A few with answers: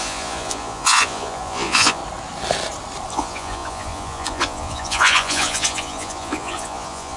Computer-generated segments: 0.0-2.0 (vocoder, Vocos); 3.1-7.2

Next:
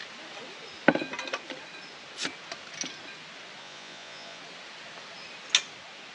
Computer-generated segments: 3.6-4.4 (vocoder, Vocos)